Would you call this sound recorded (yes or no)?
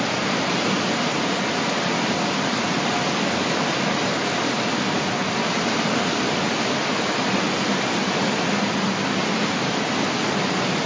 yes